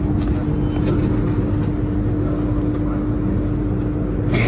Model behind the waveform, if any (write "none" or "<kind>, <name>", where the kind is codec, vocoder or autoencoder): none